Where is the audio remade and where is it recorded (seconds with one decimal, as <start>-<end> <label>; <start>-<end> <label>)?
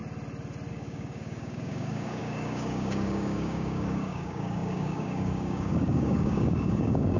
0.0-0.7 recorded; 0.7-7.2 remade